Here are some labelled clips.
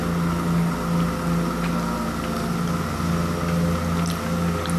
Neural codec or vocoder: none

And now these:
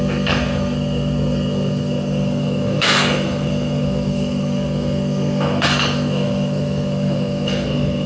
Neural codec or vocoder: codec, SNAC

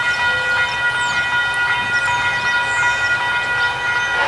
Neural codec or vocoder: none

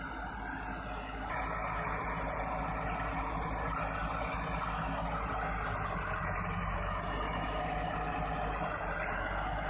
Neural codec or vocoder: none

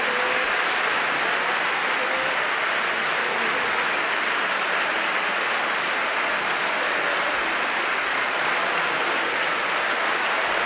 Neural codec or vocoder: none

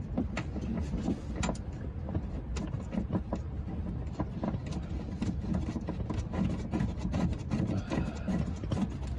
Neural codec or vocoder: none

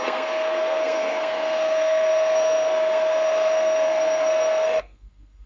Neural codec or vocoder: codec, SNAC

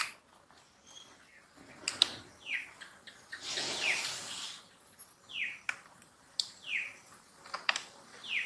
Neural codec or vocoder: none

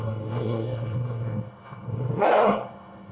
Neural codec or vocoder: codec, SNAC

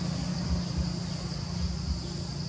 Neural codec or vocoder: none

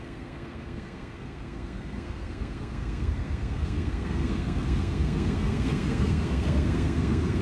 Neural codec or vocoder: codec, SNAC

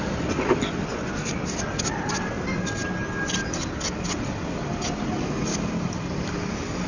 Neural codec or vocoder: none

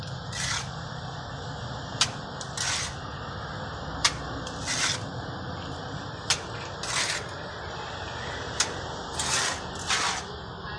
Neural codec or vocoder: none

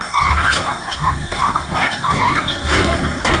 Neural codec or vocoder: codec, SNAC